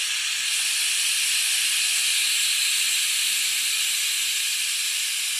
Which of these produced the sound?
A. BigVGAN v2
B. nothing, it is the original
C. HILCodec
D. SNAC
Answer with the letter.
B